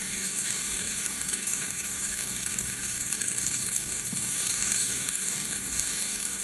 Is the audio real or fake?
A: fake